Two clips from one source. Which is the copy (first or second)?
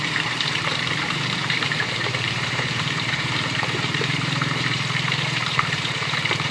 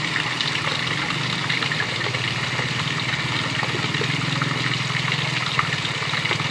first